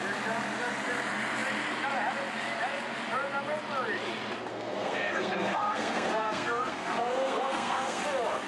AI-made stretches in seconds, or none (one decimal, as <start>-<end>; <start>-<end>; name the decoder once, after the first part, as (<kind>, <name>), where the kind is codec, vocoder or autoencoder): 4.5-8.0 (codec, SNAC)